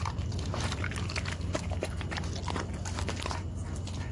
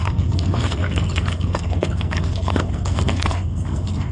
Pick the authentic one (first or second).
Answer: first